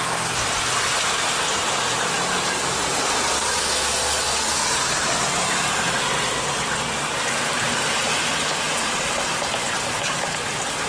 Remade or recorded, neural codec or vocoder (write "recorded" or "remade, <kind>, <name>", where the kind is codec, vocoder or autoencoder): recorded